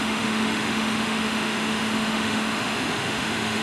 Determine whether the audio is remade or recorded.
remade